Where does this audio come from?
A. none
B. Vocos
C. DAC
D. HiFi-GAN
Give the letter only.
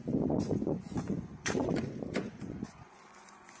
B